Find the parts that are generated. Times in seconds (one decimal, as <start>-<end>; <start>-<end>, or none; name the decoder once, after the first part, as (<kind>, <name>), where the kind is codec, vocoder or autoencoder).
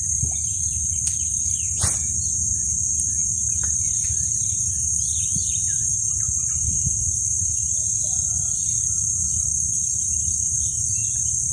none